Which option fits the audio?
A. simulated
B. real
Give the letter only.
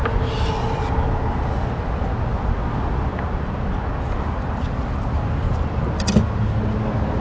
B